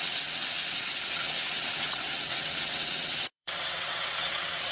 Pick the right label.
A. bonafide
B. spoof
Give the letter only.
B